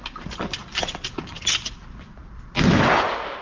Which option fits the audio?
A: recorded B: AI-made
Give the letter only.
A